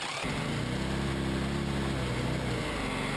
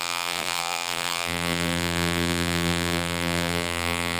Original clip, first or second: first